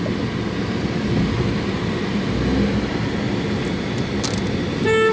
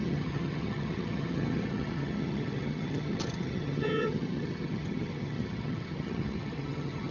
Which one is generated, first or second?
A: second